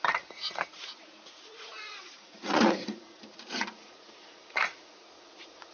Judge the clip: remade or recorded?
remade